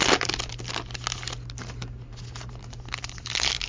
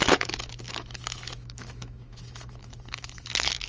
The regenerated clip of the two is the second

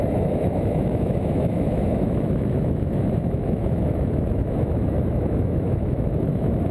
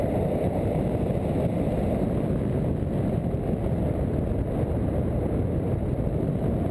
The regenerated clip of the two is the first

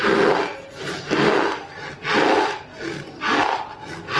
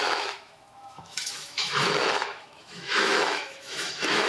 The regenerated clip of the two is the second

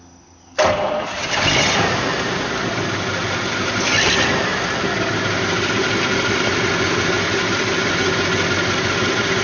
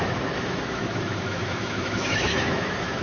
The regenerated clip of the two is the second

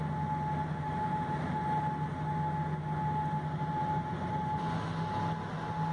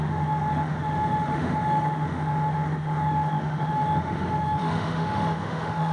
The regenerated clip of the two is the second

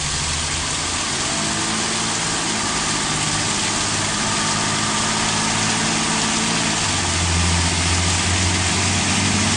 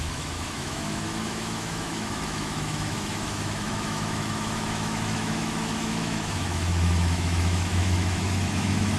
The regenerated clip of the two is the second